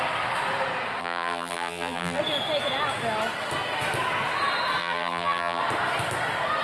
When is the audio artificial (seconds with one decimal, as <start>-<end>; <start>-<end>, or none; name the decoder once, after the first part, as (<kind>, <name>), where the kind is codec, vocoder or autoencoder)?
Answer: 1.0-2.2 (vocoder, BigVGAN v2); 4.8-5.6